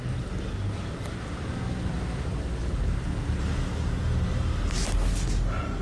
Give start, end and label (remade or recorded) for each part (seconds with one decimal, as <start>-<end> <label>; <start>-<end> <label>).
0.0-5.8 recorded